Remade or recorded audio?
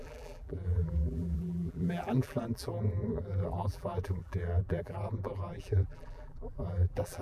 remade